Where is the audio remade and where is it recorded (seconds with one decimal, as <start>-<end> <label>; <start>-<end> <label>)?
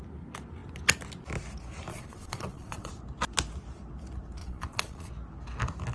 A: 0.0-1.9 recorded; 1.9-2.9 remade; 2.9-4.4 recorded; 4.4-5.1 remade; 5.1-5.9 recorded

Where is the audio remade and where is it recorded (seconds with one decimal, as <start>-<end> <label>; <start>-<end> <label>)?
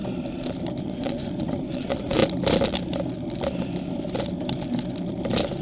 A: 0.0-0.8 recorded; 0.8-2.2 remade; 2.2-5.6 recorded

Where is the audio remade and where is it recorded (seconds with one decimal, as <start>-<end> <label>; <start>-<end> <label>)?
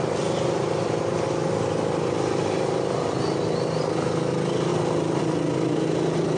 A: 0.0-6.4 recorded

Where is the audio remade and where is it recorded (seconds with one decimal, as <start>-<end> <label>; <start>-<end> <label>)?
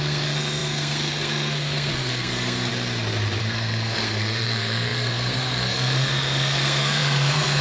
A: 0.0-2.7 remade; 2.7-3.4 recorded; 3.4-7.6 remade